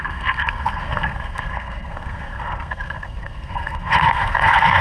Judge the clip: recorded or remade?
remade